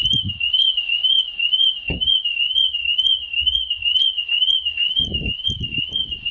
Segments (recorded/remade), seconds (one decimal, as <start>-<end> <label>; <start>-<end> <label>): 0.0-6.3 recorded